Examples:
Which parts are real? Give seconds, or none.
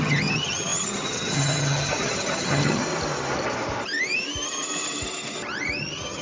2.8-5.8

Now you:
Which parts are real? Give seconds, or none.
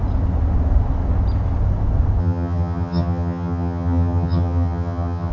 0.0-2.2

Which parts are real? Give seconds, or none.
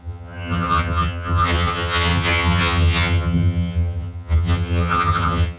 none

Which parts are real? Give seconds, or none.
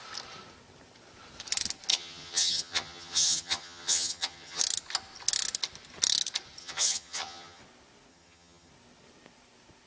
0.0-1.9; 4.6-6.6; 7.6-8.1; 8.7-9.9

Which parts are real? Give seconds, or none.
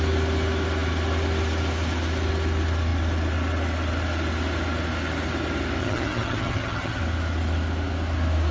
0.0-5.8; 7.0-8.5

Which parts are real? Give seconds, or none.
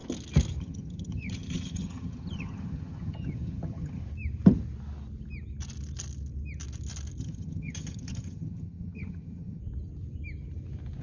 0.0-0.6; 4.0-7.2; 9.6-11.0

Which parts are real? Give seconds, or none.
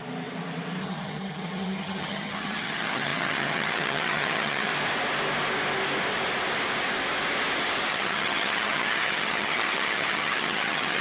0.0-0.8; 4.7-7.9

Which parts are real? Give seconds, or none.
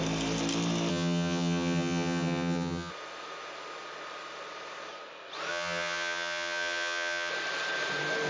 0.0-0.9; 2.9-5.5; 7.3-8.3